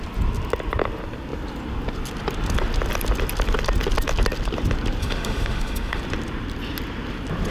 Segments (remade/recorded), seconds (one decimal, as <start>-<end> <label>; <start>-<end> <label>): 0.0-5.0 recorded; 5.0-6.0 remade; 6.0-7.5 recorded